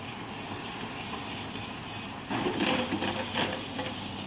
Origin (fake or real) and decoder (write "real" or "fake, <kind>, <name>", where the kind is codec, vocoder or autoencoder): real